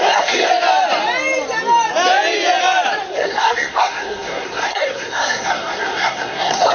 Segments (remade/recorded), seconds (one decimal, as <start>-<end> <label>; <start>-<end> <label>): 0.0-0.5 remade; 0.5-3.1 recorded; 3.1-6.7 remade

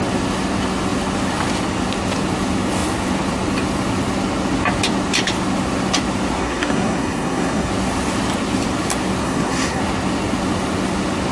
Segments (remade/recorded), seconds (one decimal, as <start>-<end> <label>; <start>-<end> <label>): 0.0-6.4 recorded; 6.4-7.7 remade; 7.7-9.2 recorded; 9.2-9.8 remade; 9.8-11.3 recorded

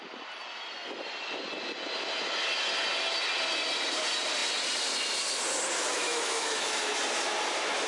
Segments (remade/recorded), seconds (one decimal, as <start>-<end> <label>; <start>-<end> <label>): 0.0-6.0 recorded; 6.0-6.9 remade; 6.9-7.9 recorded

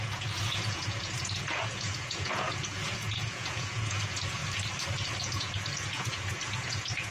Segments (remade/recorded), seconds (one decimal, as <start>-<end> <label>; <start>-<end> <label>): 0.0-4.4 remade; 4.4-5.2 recorded; 5.2-7.1 remade

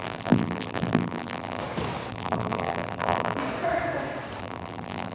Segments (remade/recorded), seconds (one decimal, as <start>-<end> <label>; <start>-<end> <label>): 0.0-1.6 remade; 1.6-2.1 recorded; 2.1-3.4 remade; 3.4-4.4 recorded; 4.4-5.1 remade